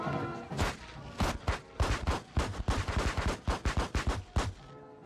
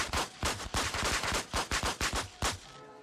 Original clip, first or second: first